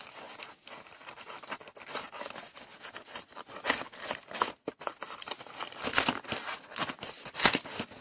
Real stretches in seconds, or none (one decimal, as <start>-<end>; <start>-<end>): 0.0-8.0